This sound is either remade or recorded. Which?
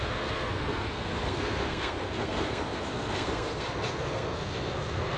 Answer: remade